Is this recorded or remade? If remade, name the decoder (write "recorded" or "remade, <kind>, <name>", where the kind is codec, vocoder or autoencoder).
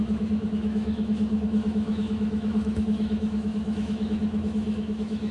remade, autoencoder, DAC-VAE